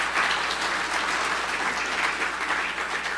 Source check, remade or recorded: recorded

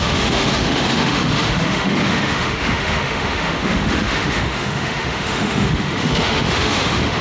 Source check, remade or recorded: remade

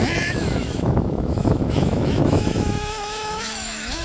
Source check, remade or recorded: remade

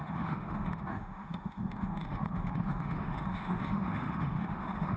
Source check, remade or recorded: remade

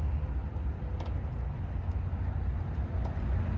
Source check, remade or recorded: recorded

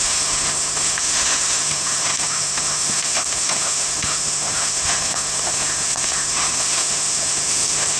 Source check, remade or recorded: remade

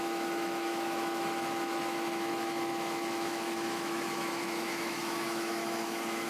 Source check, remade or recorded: remade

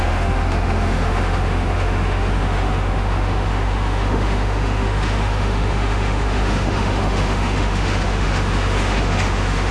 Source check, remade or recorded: remade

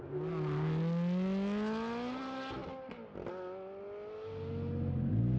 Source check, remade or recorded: recorded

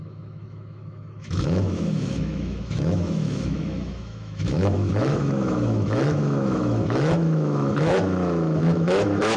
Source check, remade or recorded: remade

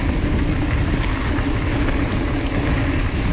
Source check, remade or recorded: recorded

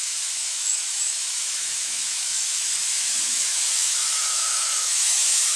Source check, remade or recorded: remade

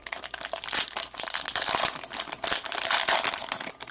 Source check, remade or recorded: recorded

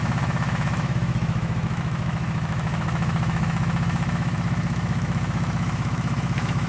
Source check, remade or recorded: remade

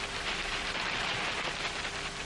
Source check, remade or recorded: recorded